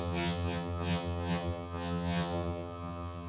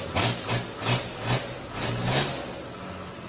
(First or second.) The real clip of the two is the second